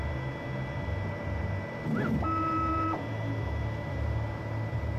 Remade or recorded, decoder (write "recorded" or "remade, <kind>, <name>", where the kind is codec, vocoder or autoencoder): recorded